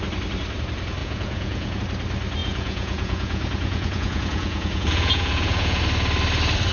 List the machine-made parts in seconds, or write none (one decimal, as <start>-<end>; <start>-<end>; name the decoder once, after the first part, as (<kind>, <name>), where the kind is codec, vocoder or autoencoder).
1.0-1.8 (vocoder, Vocos); 2.4-5.8